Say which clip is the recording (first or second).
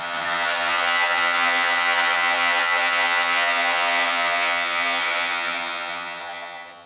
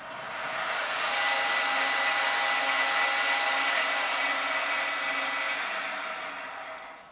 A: second